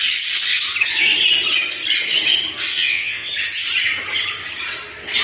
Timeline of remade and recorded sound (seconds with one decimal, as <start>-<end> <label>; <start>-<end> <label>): 0.0-2.7 recorded; 2.7-3.3 remade; 3.3-5.2 recorded